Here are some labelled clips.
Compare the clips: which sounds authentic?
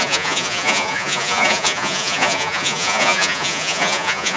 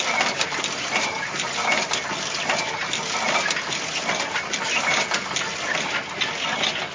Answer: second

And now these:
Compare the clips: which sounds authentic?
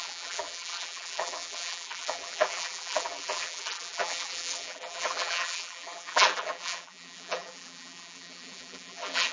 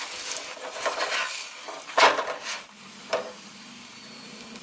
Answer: second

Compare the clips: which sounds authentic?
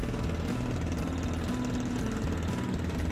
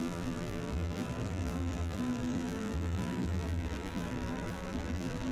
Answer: first